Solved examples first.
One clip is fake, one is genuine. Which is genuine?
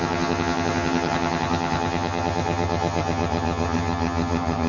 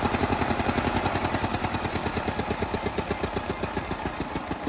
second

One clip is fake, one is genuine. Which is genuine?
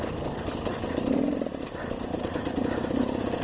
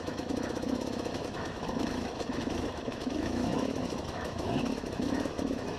first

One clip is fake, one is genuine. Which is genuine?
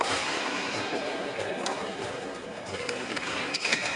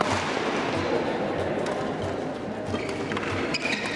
second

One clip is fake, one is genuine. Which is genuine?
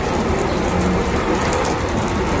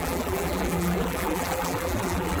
first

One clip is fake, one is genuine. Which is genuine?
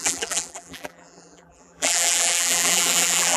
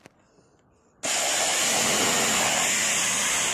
second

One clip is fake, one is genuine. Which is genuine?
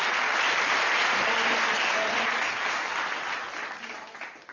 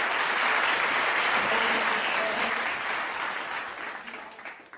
first